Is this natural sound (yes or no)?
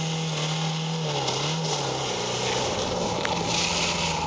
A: yes